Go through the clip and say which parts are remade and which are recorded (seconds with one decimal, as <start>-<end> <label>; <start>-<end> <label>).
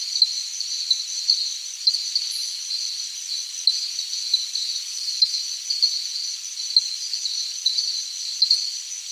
0.0-4.9 recorded; 4.9-5.4 remade; 5.4-9.1 recorded